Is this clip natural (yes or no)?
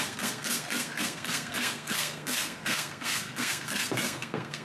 no